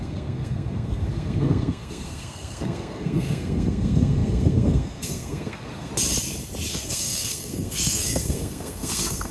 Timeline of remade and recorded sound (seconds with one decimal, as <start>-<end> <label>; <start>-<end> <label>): 0.0-5.9 remade; 5.9-6.7 recorded; 6.7-9.3 remade